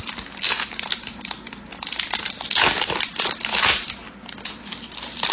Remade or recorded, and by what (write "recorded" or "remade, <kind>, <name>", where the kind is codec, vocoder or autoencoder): recorded